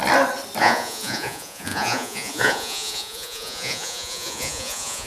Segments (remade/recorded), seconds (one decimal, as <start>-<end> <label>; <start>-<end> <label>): 0.0-0.6 recorded; 0.6-5.1 remade